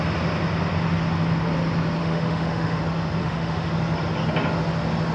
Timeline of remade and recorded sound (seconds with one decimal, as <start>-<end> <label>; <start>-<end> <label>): 0.0-2.0 recorded; 2.0-2.8 remade; 2.8-3.2 recorded; 3.2-3.7 remade; 3.7-5.1 recorded